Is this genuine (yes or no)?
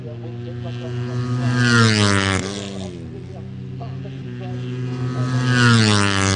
yes